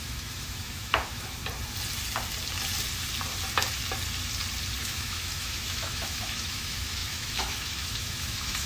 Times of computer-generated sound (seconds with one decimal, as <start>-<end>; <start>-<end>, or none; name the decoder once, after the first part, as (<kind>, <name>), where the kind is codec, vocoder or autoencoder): 0.0-1.4 (autoencoder, DAC-VAE); 4.8-8.7